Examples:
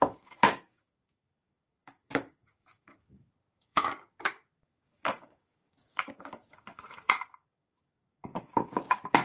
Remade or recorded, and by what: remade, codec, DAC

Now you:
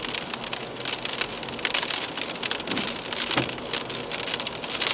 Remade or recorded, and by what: recorded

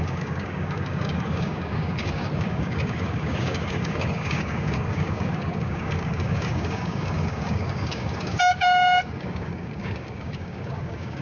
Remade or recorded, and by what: remade, codec, DAC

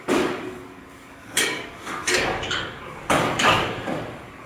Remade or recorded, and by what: remade, codec, DAC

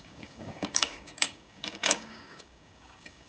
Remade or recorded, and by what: remade, codec, DAC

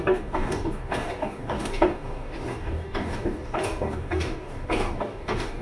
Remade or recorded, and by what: remade, codec, DAC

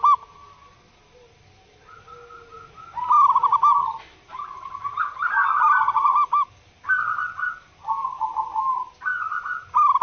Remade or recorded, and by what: recorded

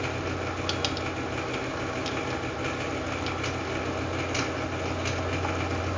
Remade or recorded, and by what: recorded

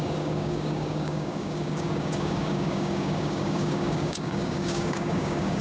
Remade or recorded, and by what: remade, codec, DAC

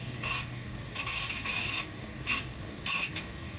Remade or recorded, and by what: remade, codec, DAC